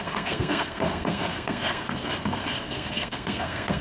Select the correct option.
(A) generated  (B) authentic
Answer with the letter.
A